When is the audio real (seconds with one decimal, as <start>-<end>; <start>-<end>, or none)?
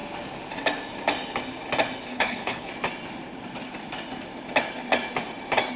0.0-2.1; 2.7-5.8